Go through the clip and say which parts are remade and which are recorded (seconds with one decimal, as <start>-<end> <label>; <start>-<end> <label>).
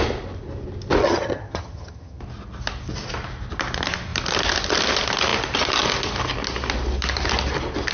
0.0-1.0 recorded; 1.0-2.2 remade; 2.2-7.9 recorded